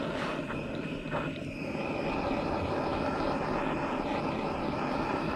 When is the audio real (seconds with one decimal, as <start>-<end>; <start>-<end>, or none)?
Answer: 0.0-5.4